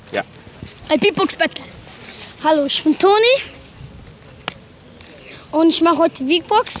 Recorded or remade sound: recorded